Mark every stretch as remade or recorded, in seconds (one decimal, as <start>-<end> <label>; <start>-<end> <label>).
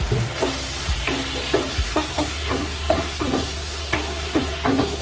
0.0-1.7 recorded; 1.7-5.0 remade